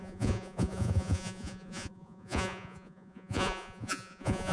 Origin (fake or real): fake